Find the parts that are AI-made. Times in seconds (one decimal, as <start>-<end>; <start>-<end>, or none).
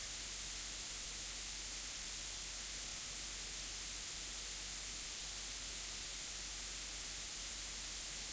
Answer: none